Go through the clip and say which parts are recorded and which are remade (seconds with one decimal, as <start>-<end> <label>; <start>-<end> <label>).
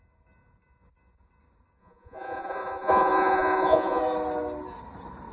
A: 0.0-1.8 recorded; 1.8-4.0 remade; 4.0-5.3 recorded